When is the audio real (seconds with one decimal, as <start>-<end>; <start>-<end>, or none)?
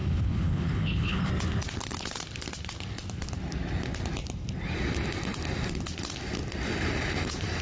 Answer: 1.3-7.6